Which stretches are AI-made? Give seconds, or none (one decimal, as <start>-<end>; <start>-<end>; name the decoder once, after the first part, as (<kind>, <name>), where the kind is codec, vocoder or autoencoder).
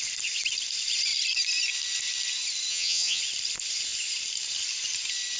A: 2.7-3.2 (vocoder, HiFi-GAN)